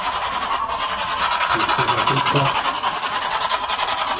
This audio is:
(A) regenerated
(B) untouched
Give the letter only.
B